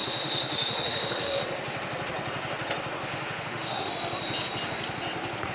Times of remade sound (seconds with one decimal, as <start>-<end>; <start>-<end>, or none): 0.0-1.4; 3.1-3.9